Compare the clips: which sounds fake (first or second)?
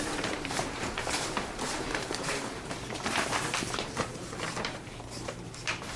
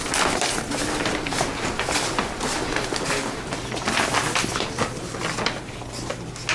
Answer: first